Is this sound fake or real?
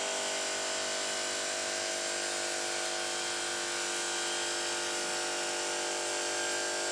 real